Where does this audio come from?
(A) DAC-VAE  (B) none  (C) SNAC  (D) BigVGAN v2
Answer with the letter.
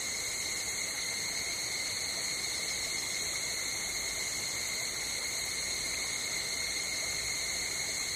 B